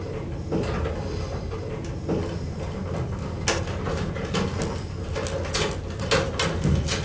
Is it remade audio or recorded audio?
recorded